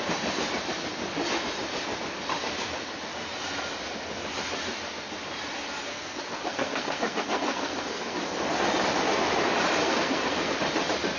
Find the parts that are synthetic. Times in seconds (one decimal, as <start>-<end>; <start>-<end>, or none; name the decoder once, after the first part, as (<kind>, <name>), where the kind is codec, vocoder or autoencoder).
5.9-8.2 (codec, SNAC); 9.8-10.5